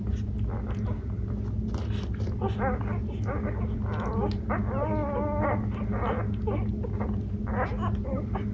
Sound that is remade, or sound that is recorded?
recorded